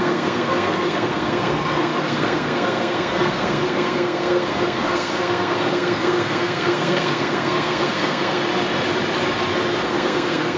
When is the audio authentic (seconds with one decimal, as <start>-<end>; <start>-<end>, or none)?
8.4-9.8